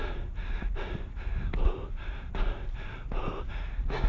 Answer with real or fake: real